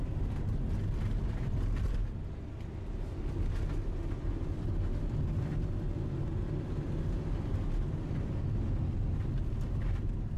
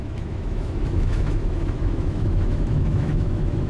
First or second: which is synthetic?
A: second